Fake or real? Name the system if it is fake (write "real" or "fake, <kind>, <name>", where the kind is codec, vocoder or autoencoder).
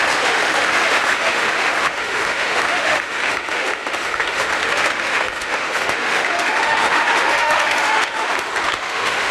fake, autoencoder, DAC-VAE